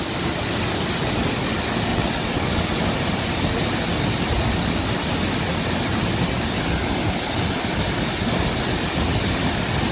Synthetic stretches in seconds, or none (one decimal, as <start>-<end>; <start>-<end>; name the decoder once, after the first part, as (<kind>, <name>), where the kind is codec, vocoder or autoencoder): 1.9-2.8 (vocoder, WaveNeXt)